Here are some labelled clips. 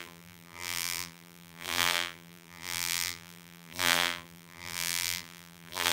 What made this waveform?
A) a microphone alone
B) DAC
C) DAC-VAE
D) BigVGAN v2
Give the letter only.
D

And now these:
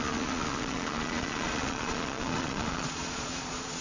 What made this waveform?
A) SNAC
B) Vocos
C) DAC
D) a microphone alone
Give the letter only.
B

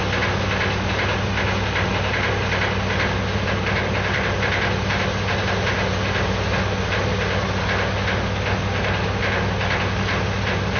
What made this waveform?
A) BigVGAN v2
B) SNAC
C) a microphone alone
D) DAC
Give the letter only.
C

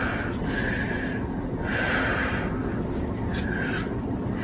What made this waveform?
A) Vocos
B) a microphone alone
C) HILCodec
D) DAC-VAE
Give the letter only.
B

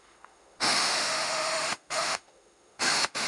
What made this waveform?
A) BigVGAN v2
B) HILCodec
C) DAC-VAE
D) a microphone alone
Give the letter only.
C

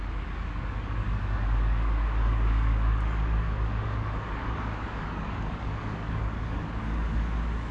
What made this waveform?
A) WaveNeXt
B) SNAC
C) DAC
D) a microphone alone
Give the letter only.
C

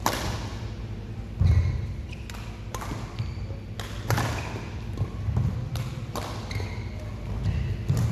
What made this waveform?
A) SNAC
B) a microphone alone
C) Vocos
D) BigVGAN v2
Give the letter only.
B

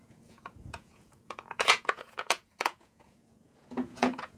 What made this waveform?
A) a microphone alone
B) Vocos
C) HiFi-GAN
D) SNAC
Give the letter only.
B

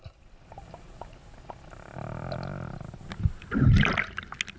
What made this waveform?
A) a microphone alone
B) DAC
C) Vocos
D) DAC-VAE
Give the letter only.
A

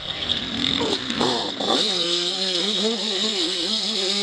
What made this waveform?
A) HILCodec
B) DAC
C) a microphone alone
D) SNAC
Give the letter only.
D